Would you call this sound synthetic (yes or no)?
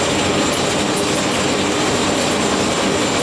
no